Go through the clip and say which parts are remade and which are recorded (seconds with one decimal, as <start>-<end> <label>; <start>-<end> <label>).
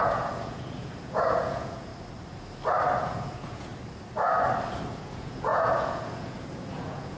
0.0-1.9 remade; 1.9-3.0 recorded; 3.0-3.7 remade; 3.7-4.9 recorded; 4.9-7.2 remade